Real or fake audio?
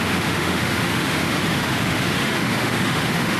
fake